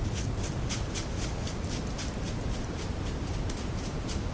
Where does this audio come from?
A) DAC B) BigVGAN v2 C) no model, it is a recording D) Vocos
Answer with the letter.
C